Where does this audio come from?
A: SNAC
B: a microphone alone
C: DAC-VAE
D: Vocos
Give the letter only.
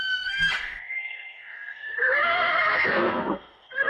A